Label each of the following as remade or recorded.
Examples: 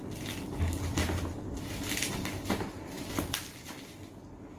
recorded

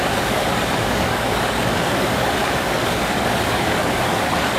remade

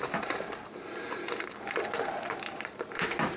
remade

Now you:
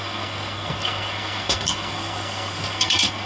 remade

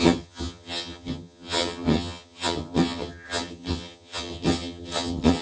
remade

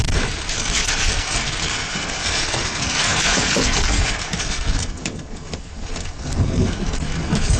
remade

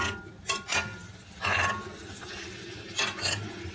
recorded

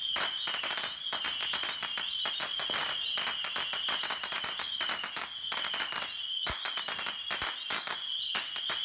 recorded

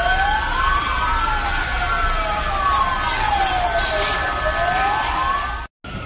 recorded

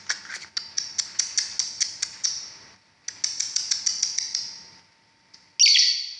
recorded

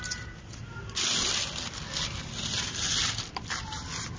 recorded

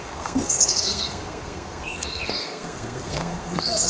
remade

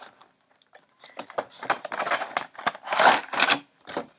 recorded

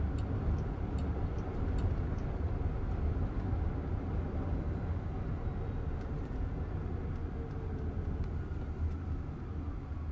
recorded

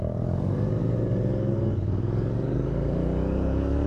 remade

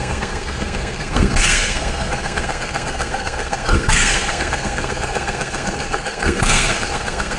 remade